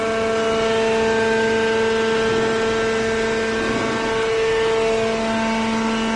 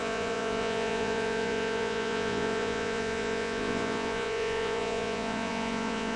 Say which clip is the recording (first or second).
first